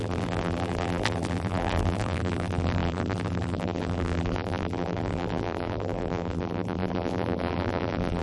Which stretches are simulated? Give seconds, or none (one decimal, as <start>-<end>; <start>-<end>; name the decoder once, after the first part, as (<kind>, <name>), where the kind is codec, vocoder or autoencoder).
0.0-8.2 (vocoder, BigVGAN v2)